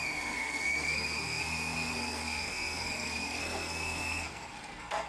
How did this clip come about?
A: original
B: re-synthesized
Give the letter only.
B